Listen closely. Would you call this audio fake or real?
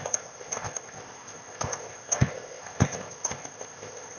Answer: fake